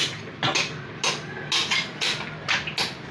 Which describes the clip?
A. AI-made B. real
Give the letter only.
B